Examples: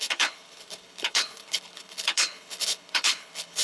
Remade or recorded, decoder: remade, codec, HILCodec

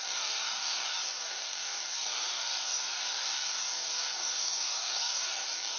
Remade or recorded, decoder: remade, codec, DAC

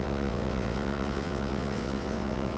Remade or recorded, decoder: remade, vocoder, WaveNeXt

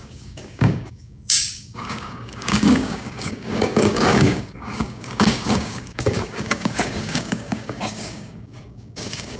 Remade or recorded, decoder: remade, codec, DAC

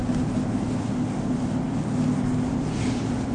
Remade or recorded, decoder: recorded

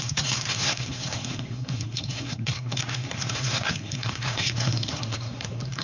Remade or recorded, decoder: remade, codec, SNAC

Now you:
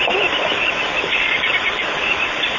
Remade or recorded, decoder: recorded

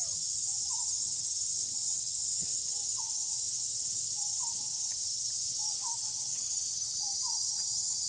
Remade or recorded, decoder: remade, vocoder, HiFi-GAN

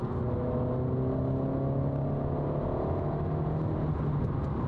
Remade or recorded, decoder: recorded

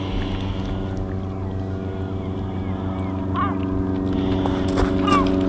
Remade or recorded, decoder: recorded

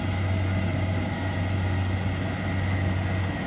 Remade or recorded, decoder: recorded